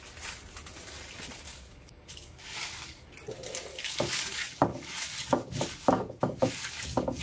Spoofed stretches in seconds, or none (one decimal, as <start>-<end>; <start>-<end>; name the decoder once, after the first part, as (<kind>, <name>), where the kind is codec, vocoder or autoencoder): 1.5-3.1 (codec, DAC); 3.7-7.2